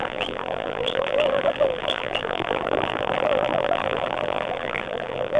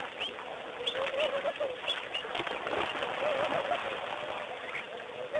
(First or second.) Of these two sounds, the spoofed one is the first